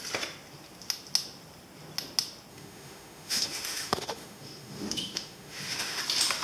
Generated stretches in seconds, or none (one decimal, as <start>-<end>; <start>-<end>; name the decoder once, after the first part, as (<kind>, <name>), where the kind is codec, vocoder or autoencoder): 2.5-6.0 (autoencoder, DAC-VAE)